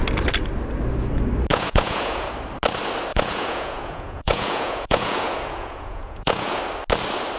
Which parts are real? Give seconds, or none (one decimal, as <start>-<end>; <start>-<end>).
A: 0.0-1.5; 2.3-3.1; 6.6-7.4